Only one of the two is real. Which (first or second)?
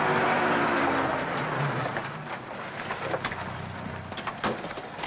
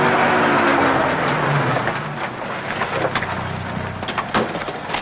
second